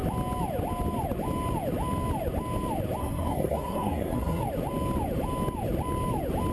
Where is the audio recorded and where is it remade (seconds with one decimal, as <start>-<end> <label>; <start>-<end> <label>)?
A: 0.0-3.0 recorded; 3.0-4.4 remade; 4.4-6.5 recorded

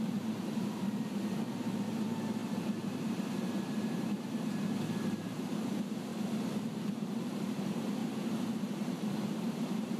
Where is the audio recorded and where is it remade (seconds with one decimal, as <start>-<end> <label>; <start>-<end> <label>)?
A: 0.0-6.1 remade; 6.1-6.7 recorded; 6.7-8.0 remade; 8.0-8.5 recorded; 8.5-10.0 remade

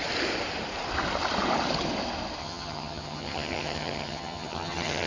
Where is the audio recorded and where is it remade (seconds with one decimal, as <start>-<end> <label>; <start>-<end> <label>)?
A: 0.0-2.4 recorded; 2.4-5.1 remade

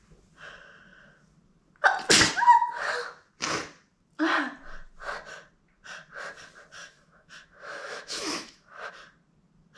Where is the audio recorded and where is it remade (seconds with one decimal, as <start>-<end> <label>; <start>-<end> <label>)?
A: 0.0-6.8 recorded; 6.8-8.9 remade; 8.9-9.8 recorded

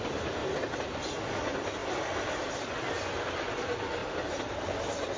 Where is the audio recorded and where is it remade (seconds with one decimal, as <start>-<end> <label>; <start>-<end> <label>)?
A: 0.0-5.2 recorded

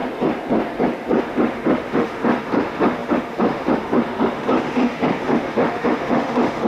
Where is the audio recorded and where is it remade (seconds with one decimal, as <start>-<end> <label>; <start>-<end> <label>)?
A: 0.0-1.2 recorded; 1.2-6.7 remade

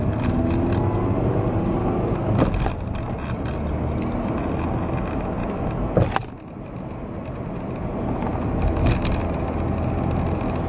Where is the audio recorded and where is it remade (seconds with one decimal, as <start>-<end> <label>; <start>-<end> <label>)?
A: 0.0-10.7 recorded